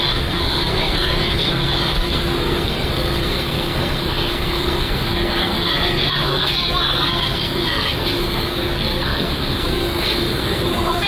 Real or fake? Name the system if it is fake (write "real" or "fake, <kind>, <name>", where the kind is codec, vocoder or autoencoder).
fake, codec, SNAC